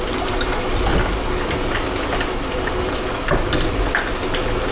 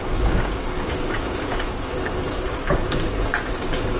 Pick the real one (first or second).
first